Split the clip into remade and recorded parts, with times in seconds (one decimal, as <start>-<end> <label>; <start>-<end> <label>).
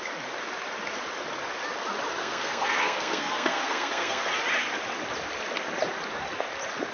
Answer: 0.0-2.2 recorded; 2.2-4.3 remade; 4.3-6.9 recorded